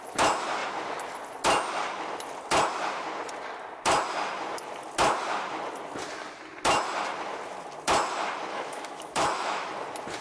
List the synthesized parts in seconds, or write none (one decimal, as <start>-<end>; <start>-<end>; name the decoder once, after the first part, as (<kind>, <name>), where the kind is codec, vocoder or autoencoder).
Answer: 8.5-9.7 (autoencoder, DAC-VAE)